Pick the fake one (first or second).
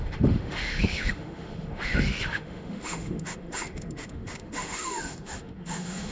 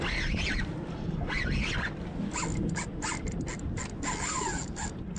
first